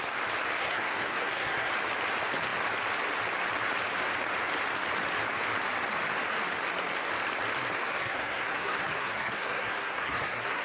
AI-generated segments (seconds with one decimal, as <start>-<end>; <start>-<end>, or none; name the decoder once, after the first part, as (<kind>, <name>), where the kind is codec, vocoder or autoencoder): 0.6-1.7 (codec, SNAC); 7.8-10.6